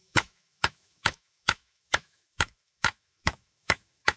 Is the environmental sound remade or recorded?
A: remade